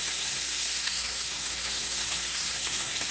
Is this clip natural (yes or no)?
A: no